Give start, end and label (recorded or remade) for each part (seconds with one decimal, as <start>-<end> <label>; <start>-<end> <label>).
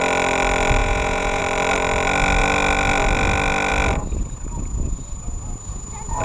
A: 0.0-0.8 recorded; 0.8-1.4 remade; 1.4-6.2 recorded